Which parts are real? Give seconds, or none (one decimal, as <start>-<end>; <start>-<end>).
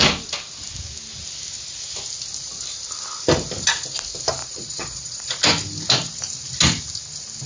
0.0-4.4; 5.4-7.5